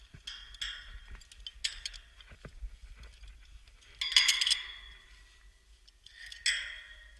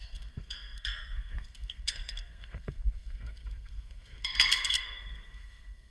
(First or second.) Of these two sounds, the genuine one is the first